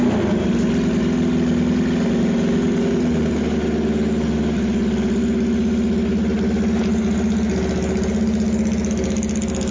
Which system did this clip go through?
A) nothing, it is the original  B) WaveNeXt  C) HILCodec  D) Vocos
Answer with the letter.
A